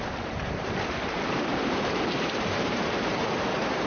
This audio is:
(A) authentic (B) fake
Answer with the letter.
B